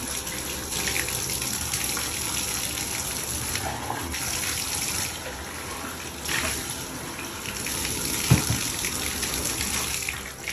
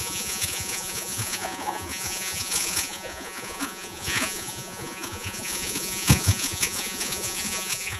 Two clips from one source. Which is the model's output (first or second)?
second